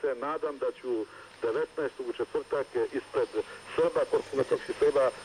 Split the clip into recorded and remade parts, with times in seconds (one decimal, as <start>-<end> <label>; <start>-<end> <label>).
0.0-4.2 recorded; 4.2-4.7 remade; 4.7-5.2 recorded